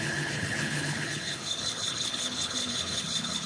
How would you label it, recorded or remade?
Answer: remade